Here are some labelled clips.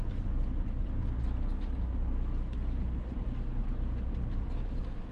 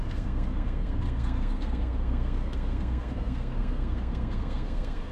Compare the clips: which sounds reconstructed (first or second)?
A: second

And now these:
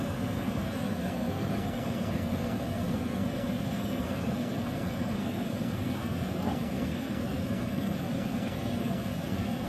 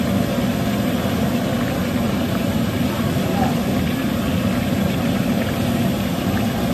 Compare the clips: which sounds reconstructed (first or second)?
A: first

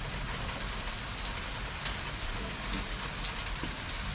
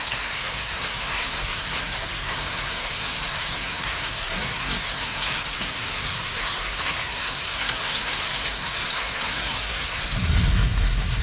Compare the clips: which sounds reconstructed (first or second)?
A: second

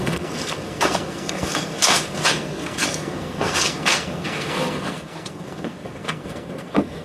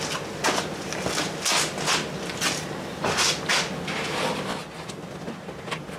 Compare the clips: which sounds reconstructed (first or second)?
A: first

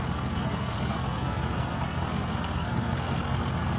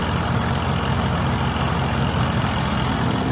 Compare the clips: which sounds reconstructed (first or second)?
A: first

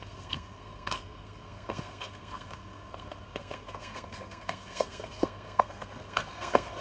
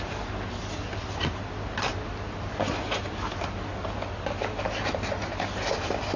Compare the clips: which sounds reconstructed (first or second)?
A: first